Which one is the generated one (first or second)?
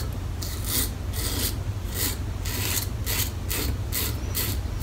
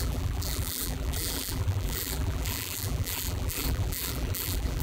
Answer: second